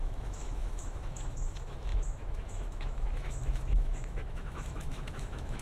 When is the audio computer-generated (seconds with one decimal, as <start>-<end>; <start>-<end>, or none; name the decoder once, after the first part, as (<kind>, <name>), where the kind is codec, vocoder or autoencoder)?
0.0-5.6 (autoencoder, DAC-VAE)